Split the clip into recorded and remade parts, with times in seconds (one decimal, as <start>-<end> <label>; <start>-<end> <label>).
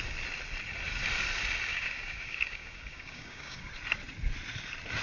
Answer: 0.0-1.7 recorded; 1.7-3.7 remade; 3.7-5.0 recorded